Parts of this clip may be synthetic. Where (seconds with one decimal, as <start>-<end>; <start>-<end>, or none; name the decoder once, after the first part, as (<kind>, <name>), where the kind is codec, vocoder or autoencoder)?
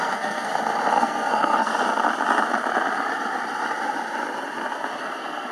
0.0-0.5 (codec, SNAC); 1.0-1.7; 5.0-5.5